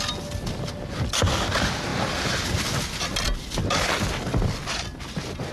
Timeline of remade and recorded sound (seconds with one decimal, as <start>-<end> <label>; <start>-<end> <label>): 0.0-5.5 recorded